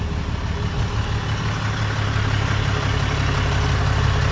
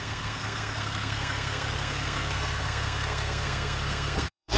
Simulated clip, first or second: second